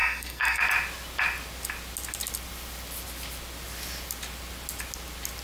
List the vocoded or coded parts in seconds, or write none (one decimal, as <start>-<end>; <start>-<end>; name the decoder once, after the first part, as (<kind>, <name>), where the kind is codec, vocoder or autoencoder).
0.0-0.6 (codec, SNAC)